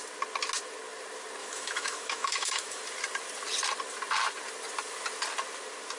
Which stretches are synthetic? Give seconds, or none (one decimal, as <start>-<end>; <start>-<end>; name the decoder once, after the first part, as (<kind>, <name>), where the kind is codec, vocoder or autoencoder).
1.4-2.8 (autoencoder, DAC-VAE)